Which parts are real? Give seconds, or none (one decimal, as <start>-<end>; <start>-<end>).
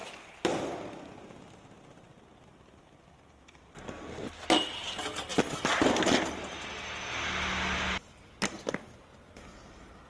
0.0-10.1